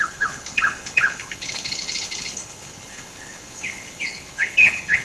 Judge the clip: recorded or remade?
remade